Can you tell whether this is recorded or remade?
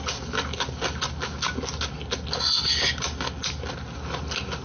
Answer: recorded